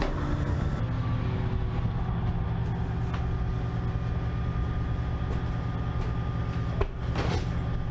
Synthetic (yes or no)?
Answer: no